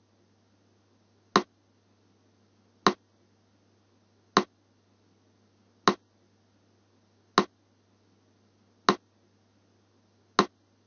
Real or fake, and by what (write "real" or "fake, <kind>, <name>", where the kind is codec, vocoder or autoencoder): real